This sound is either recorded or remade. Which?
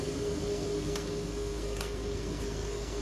remade